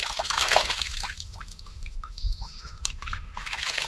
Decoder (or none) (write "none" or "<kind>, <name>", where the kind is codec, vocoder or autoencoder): autoencoder, DAC-VAE